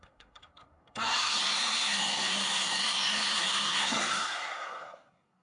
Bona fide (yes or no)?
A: no